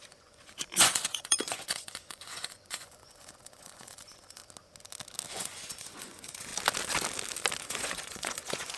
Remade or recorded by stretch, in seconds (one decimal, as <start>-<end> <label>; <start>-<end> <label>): 0.0-4.4 remade; 4.4-5.3 recorded; 5.3-6.5 remade; 6.5-7.6 recorded; 7.6-8.8 remade